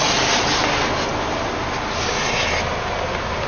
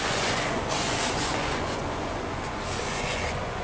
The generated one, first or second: second